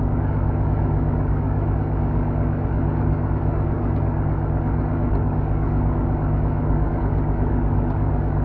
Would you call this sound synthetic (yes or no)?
yes